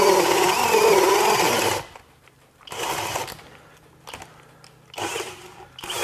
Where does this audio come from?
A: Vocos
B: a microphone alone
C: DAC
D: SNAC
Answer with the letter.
B